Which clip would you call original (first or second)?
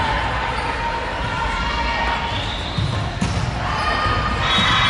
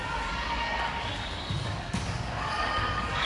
first